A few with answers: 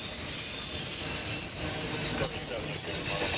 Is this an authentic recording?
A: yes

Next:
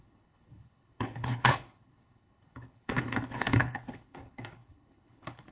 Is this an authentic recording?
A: no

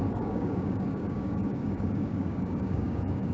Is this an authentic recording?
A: no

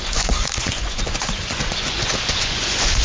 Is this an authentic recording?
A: no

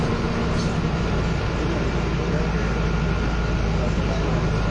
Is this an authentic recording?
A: yes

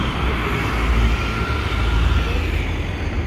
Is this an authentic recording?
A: yes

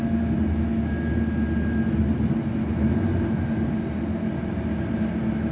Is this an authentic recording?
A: yes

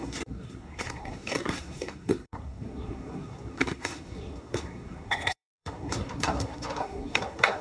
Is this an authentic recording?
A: no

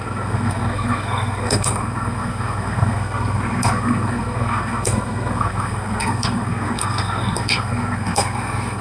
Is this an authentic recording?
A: no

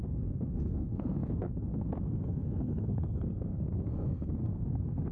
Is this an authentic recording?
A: no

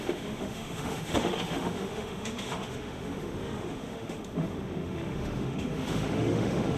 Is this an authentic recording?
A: no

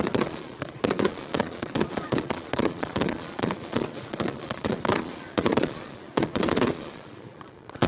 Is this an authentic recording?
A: no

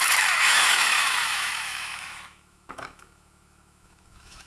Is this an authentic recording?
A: no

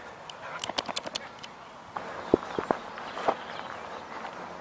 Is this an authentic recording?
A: yes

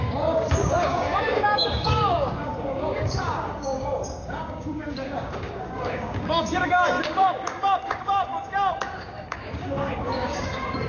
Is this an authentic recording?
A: no